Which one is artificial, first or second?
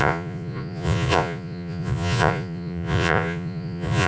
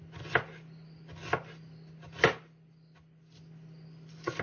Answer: first